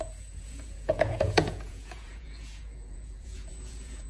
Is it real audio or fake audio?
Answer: fake